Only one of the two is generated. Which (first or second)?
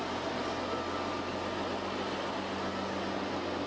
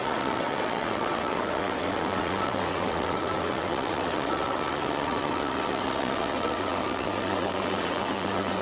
second